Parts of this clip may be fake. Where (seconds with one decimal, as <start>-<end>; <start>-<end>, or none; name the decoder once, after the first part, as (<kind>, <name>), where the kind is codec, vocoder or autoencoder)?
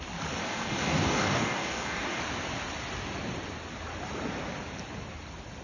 0.4-2.2 (codec, DAC)